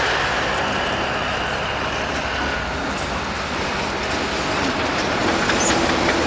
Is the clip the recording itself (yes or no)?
yes